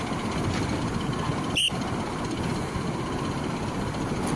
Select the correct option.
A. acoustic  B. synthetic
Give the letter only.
A